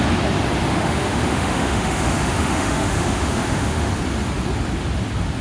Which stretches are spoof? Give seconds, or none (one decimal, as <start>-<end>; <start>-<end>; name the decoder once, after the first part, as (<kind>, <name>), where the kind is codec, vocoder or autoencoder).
0.7-3.9 (autoencoder, DAC-VAE)